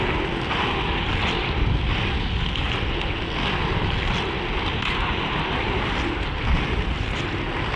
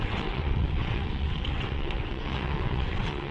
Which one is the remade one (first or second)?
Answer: second